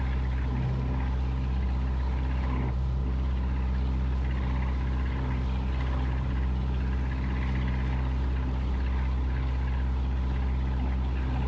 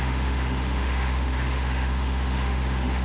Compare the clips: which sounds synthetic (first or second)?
second